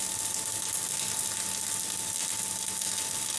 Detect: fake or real real